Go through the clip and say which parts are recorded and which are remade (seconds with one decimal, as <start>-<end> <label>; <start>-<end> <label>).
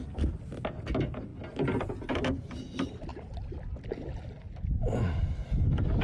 0.0-6.0 recorded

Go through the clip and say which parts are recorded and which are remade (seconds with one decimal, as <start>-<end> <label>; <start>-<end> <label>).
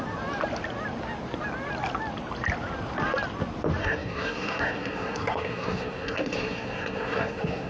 0.0-3.8 recorded; 3.8-7.7 remade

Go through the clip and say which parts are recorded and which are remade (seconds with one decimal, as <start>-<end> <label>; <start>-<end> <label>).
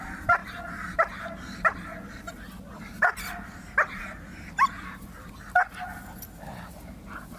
0.0-7.4 recorded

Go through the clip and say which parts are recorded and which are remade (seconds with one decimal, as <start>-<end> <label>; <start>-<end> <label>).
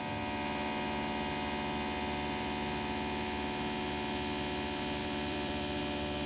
0.0-5.0 recorded; 5.0-5.8 remade; 5.8-6.3 recorded